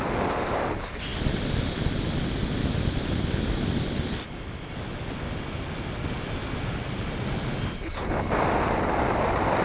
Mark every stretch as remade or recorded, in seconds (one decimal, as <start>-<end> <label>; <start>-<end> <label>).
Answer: 0.0-9.6 recorded

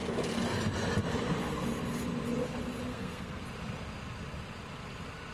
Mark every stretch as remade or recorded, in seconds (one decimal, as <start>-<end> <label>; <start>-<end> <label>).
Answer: 0.0-2.9 recorded; 2.9-3.4 remade; 3.4-5.3 recorded

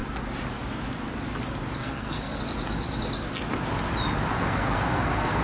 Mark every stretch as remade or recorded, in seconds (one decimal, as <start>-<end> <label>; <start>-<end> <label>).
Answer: 0.0-1.8 recorded; 1.8-2.4 remade; 2.4-4.3 recorded; 4.3-5.4 remade

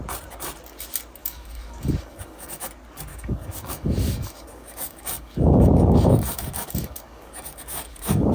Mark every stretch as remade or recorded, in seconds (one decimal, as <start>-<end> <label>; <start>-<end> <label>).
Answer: 0.0-1.2 recorded; 1.2-2.7 remade; 2.7-3.1 recorded; 3.1-8.3 remade

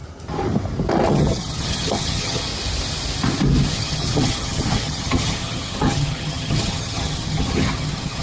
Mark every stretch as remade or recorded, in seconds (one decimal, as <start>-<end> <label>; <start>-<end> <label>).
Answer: 0.0-1.1 recorded; 1.1-2.5 remade; 2.5-3.7 recorded; 3.7-8.2 remade